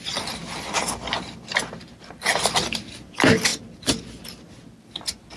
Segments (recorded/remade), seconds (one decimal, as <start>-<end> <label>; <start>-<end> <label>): 0.0-5.4 recorded

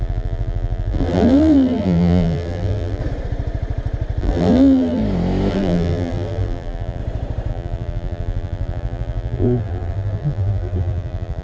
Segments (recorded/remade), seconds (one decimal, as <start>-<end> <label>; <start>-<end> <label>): 0.0-3.0 remade; 3.0-4.2 recorded; 4.2-5.0 remade; 5.0-5.5 recorded; 5.5-7.0 remade; 7.0-7.5 recorded; 7.5-11.4 remade